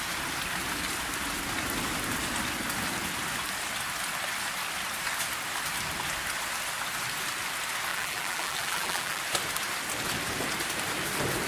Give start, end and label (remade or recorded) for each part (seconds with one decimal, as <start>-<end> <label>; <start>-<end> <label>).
0.0-7.9 recorded; 7.9-9.2 remade; 9.2-11.5 recorded